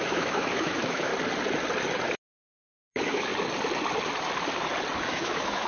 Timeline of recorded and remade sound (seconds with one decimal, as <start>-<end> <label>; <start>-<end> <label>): 0.0-1.1 remade; 1.1-2.2 recorded; 2.2-3.3 remade; 3.3-5.1 recorded; 5.1-5.7 remade